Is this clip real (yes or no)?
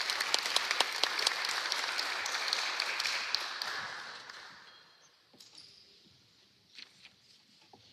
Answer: yes